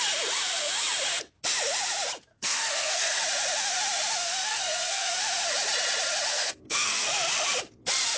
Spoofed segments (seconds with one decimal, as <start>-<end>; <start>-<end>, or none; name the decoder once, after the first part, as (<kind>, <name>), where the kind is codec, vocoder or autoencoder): 2.3-3.2 (codec, SNAC); 4.5-5.1; 6.3-7.1

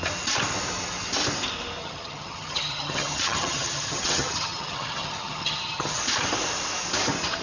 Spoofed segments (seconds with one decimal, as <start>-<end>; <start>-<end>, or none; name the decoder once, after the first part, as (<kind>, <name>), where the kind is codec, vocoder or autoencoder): 1.8-6.0 (vocoder, HiFi-GAN)

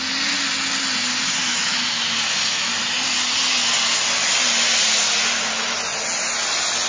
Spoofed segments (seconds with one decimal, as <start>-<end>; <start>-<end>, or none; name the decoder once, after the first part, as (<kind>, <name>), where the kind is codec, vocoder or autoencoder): 1.5-2.7 (autoencoder, DAC-VAE)

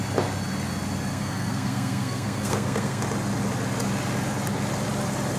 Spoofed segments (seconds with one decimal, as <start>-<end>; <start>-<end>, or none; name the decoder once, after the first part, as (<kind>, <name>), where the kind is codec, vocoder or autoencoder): 1.1-3.0 (codec, SNAC)

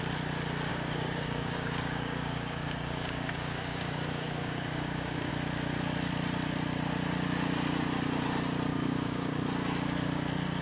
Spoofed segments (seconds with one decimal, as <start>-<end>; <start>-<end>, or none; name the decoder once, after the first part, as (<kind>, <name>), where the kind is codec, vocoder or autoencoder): 0.7-5.3 (codec, DAC); 8.7-9.4

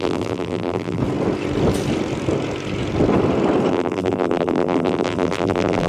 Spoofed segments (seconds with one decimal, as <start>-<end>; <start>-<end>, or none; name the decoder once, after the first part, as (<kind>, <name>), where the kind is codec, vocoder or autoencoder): 0.0-1.0 (vocoder, BigVGAN v2); 3.7-5.9

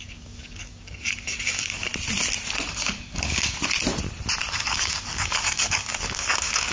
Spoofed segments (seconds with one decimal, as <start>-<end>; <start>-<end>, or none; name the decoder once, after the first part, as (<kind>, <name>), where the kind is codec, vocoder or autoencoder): 0.0-1.9 (codec, DAC); 2.7-3.6; 4.5-6.7